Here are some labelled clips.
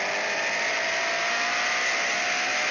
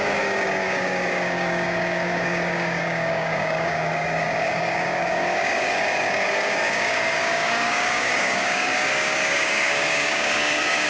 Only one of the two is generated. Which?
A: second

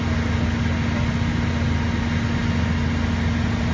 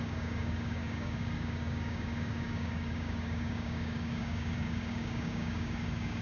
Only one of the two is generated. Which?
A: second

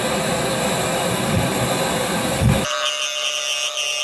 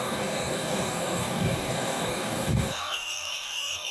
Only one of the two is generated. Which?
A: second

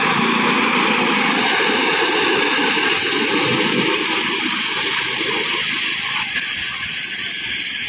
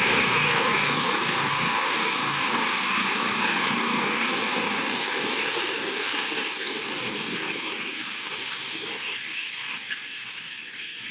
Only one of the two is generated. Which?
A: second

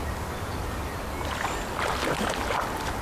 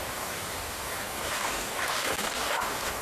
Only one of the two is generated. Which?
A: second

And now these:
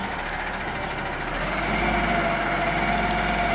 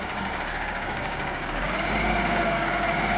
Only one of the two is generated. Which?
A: second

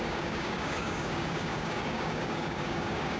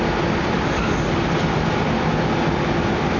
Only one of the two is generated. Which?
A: first